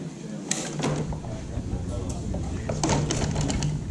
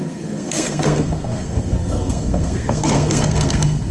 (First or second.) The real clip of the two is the first